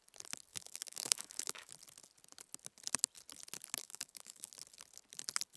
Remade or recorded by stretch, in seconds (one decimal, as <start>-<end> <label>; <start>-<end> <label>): 0.0-0.5 recorded; 0.5-1.7 remade; 1.7-3.8 recorded; 3.8-4.5 remade; 4.5-5.6 recorded